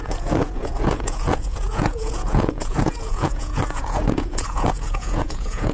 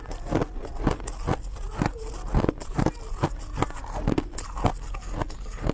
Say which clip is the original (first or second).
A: second